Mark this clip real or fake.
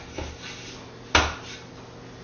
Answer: real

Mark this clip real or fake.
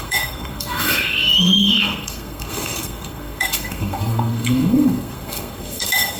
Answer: fake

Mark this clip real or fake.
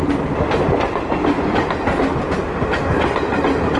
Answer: real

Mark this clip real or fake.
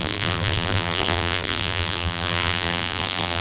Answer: fake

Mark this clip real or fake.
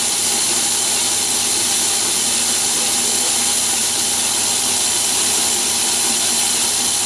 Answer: real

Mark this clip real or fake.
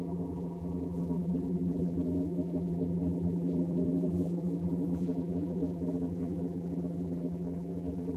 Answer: fake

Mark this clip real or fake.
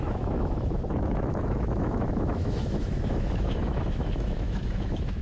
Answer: fake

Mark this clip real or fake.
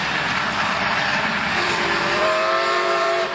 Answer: fake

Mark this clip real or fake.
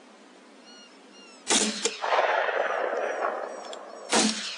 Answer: real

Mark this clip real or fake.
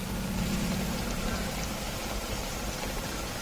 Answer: fake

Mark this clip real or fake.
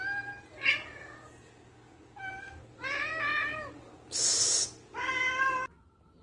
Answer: real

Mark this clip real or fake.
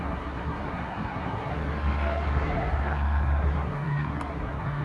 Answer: fake